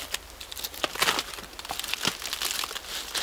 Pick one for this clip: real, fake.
real